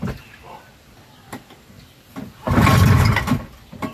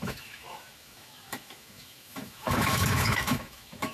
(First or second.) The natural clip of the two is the first